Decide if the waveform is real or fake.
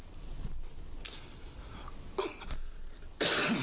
real